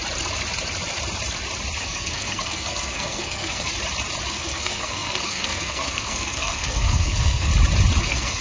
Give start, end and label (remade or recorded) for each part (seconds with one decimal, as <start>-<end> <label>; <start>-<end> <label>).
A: 0.0-1.8 recorded; 1.8-3.7 remade; 3.7-4.3 recorded; 4.3-7.5 remade; 7.5-8.0 recorded; 8.0-8.4 remade